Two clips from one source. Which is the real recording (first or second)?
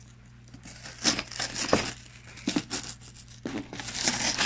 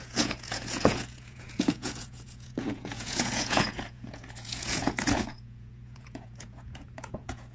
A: first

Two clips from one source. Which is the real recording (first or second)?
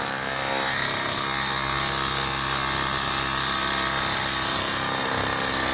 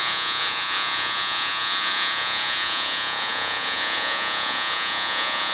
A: first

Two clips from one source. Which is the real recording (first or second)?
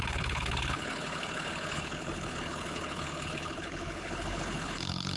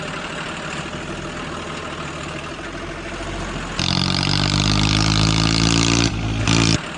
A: second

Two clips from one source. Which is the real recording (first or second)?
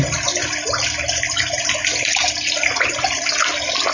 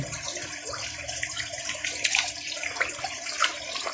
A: first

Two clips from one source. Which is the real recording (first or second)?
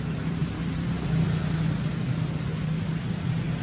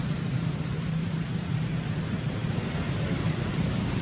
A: first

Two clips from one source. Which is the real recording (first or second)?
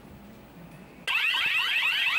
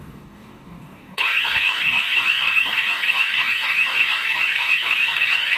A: first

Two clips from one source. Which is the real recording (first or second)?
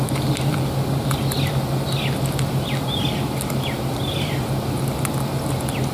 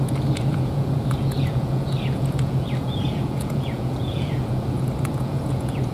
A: first